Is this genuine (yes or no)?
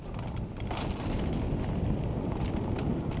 yes